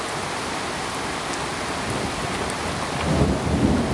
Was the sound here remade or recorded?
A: recorded